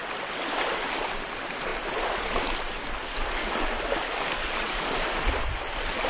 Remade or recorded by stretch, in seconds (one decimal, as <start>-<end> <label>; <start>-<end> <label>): 0.0-1.7 remade; 1.7-5.4 recorded; 5.4-6.1 remade